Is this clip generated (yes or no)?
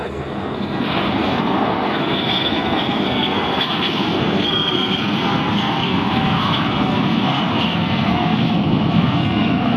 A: yes